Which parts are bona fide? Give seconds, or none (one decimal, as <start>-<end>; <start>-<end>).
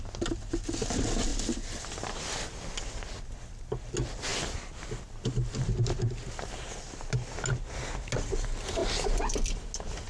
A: 0.0-1.3; 2.6-10.1